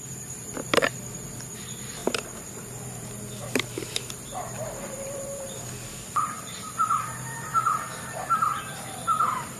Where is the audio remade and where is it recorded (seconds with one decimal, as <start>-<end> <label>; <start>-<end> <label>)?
0.0-7.5 remade; 7.5-8.0 recorded; 8.0-9.6 remade